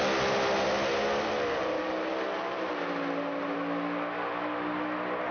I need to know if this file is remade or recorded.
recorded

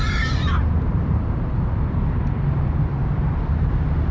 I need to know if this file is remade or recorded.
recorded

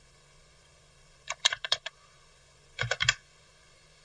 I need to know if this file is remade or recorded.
remade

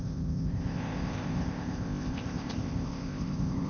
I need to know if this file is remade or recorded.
remade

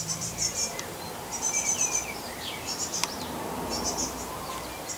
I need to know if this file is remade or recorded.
remade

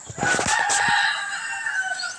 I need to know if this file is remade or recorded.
recorded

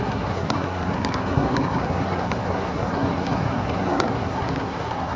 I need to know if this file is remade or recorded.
remade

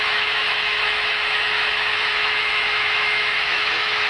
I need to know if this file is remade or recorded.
remade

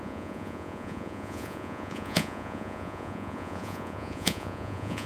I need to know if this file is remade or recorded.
remade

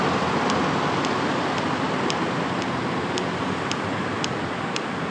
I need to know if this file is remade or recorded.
recorded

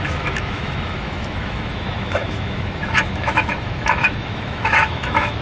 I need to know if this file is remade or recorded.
remade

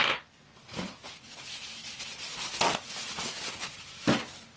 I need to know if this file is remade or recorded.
recorded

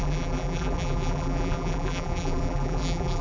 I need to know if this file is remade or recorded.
remade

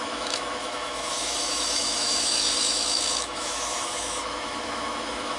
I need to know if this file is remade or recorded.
remade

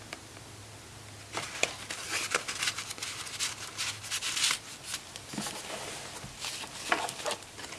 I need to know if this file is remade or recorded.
recorded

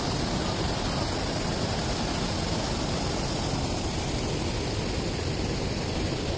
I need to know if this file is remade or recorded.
recorded